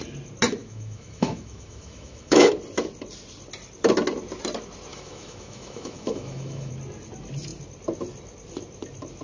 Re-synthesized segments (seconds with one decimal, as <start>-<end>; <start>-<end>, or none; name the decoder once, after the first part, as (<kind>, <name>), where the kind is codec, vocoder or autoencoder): 0.6-2.5 (autoencoder, DAC-VAE); 4.9-6.7